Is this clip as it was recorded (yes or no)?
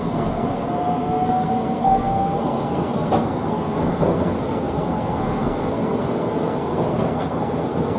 no